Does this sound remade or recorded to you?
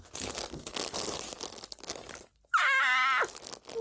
recorded